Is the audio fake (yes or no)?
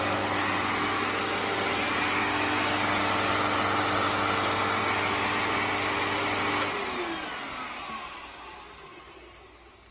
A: no